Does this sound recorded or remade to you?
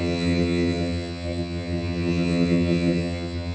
remade